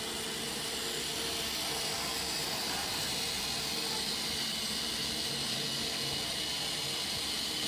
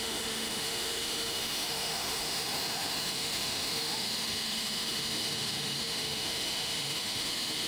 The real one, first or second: first